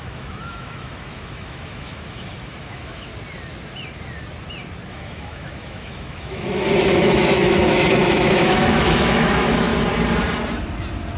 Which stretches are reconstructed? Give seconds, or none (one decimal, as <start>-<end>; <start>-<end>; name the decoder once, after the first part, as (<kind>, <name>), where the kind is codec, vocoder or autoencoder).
0.0-3.1 (autoencoder, DAC-VAE); 4.9-9.7